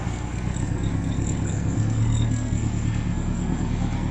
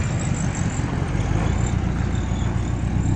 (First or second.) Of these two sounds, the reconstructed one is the first